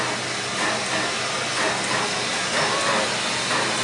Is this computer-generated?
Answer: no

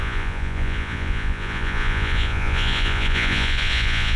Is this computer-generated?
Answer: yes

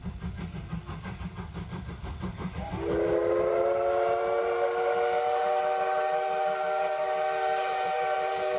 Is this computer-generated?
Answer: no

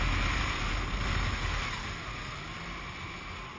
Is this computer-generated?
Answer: no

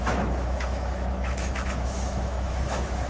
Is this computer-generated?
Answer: yes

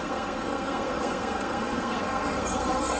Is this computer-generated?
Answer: yes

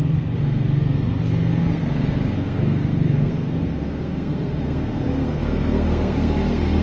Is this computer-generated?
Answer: yes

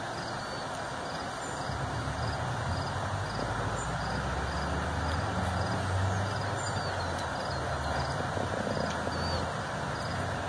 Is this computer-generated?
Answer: no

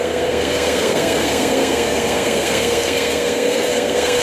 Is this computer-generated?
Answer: yes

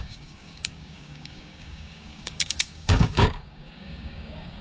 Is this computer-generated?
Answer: yes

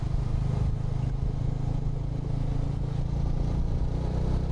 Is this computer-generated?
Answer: no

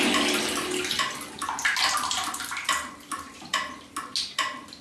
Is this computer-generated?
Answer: no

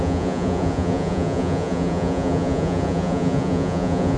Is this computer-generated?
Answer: yes